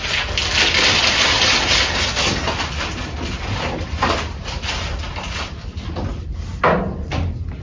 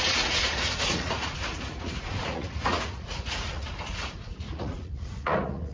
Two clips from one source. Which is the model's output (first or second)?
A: second